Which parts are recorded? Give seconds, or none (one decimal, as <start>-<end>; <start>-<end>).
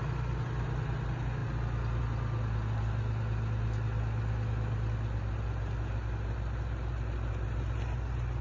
0.0-8.4